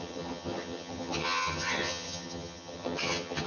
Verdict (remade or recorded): remade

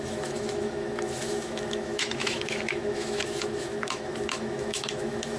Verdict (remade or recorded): remade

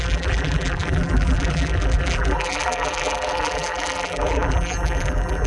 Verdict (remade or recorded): remade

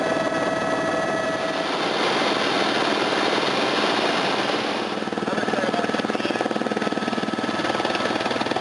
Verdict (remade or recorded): recorded